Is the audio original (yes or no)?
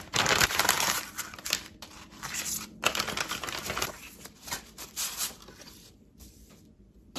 no